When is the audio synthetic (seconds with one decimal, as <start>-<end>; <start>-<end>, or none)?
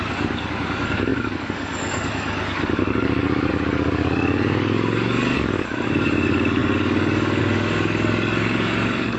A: 0.0-9.2